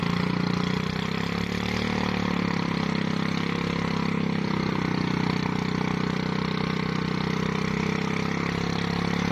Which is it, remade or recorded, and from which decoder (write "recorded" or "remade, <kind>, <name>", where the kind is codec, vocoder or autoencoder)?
recorded